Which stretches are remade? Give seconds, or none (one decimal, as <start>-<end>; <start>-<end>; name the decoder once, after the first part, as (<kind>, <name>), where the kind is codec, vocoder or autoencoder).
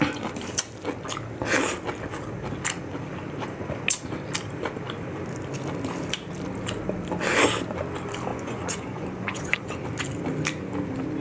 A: 8.3-9.7 (vocoder, Vocos)